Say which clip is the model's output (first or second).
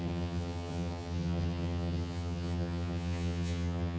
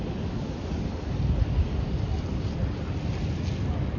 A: first